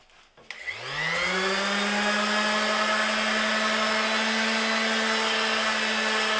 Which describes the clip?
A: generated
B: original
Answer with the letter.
B